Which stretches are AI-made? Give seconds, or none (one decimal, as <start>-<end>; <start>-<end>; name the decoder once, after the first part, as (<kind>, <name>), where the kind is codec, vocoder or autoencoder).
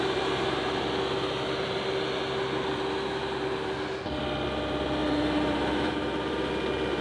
5.0-6.5 (vocoder, BigVGAN v2)